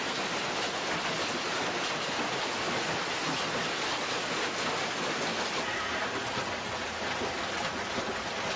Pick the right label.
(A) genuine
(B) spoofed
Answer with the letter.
A